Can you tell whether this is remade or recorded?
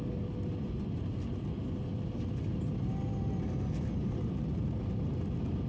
recorded